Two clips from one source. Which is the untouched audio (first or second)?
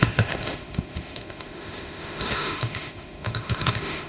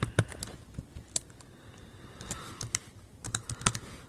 second